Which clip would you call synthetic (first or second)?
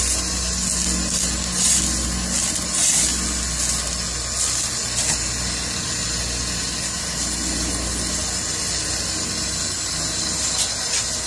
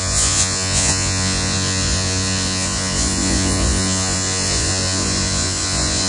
second